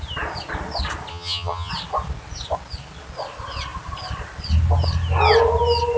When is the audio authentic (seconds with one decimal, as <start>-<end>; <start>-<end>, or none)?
0.0-1.1; 1.7-6.0